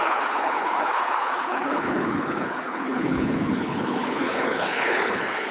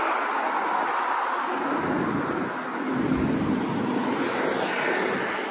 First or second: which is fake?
first